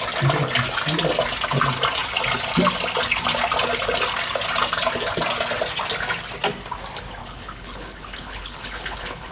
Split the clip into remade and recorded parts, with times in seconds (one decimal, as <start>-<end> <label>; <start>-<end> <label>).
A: 0.0-7.2 recorded; 7.2-9.3 remade